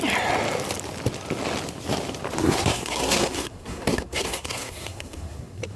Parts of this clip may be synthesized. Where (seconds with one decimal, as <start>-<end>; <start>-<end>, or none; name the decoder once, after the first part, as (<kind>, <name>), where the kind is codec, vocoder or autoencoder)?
2.4-5.8 (codec, SNAC)